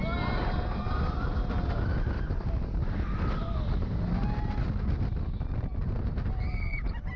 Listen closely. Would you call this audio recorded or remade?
recorded